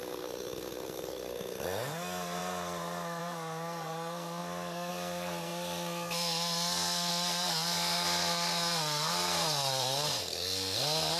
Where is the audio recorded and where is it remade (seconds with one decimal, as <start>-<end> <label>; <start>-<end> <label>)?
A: 0.0-11.2 remade